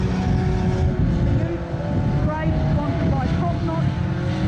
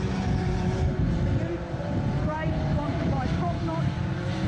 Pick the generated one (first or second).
second